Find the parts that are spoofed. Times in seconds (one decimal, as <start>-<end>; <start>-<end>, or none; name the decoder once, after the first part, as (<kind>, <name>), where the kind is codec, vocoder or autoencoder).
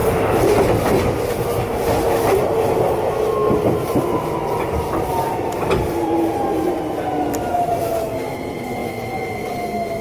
3.4-7.8 (vocoder, BigVGAN v2); 8.8-9.6